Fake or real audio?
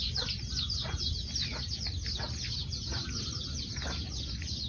real